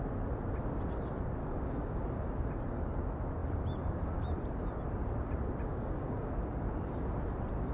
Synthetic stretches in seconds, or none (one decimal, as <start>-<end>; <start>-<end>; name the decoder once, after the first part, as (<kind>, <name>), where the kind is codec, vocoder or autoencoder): 1.4-2.0 (codec, DAC); 5.7-6.3